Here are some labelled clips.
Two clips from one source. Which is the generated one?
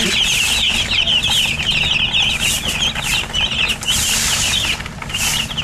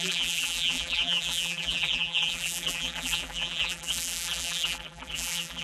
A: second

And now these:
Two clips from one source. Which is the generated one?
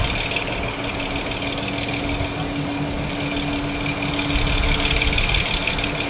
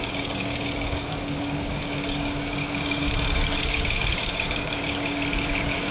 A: second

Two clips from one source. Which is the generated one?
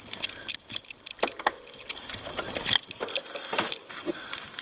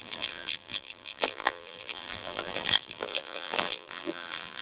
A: second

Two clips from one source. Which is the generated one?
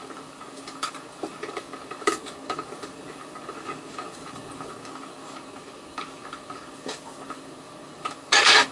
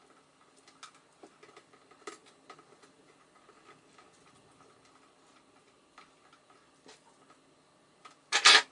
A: first